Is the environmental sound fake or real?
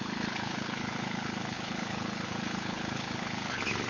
fake